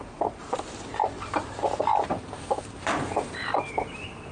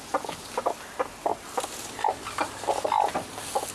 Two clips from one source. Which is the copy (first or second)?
first